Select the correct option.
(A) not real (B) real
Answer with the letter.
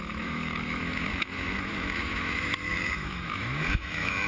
A